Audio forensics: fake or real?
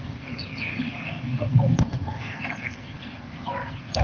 fake